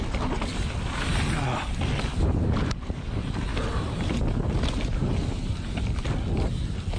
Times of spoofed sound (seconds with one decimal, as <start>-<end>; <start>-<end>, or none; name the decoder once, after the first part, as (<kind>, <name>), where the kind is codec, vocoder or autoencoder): none